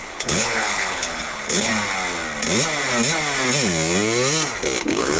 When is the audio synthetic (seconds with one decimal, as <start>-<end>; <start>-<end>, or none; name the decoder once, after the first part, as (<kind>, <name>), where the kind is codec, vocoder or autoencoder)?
0.0-1.7 (codec, HILCodec); 4.8-5.2